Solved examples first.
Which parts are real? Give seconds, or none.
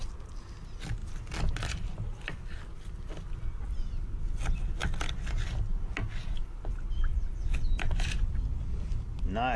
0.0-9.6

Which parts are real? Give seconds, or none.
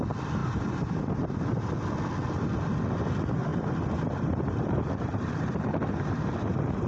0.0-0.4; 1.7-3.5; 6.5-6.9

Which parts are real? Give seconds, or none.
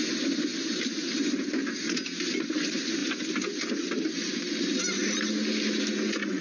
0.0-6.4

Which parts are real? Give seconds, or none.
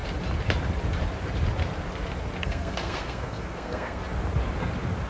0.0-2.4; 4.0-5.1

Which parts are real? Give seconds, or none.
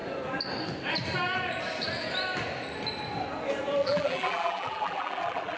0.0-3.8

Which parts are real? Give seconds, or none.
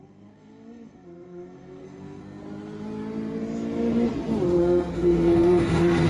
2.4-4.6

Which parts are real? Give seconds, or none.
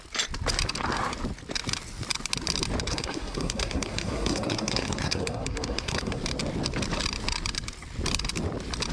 0.0-2.9; 6.2-8.9